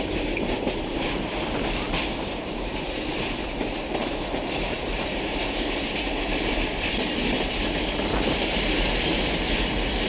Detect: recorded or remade remade